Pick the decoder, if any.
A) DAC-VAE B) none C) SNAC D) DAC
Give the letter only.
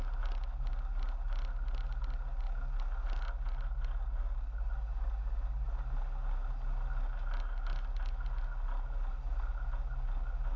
B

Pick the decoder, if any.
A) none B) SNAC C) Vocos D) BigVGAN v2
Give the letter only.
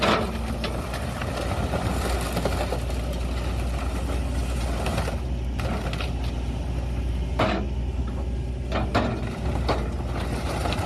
A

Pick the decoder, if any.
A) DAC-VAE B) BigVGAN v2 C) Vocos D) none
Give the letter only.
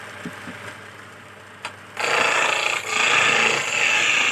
D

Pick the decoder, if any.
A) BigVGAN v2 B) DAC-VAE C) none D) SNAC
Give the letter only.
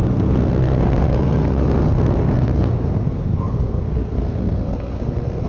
D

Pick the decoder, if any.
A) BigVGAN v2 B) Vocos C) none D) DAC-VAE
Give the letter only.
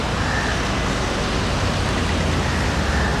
C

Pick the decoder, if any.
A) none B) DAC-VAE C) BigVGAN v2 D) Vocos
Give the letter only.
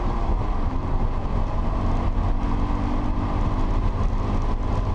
A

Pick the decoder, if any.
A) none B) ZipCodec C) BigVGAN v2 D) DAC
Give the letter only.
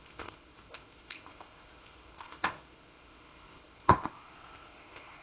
B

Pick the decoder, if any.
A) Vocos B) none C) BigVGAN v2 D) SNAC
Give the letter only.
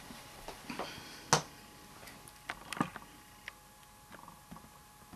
B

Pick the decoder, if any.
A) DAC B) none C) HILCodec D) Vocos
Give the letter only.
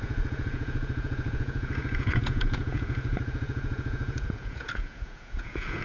D